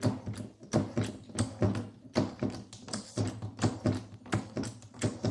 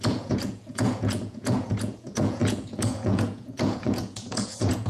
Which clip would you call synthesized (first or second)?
second